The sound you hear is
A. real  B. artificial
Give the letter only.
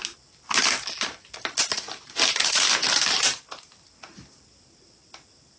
A